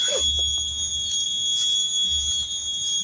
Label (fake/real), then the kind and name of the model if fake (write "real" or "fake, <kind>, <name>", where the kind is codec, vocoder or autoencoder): real